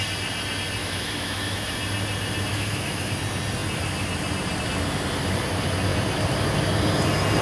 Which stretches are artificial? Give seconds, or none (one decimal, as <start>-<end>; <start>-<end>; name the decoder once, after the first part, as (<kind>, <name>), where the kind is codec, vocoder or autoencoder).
0.8-1.7 (autoencoder, DAC-VAE); 2.5-3.1